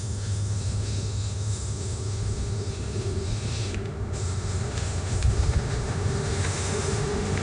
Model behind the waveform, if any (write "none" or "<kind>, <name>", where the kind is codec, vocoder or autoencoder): autoencoder, DAC-VAE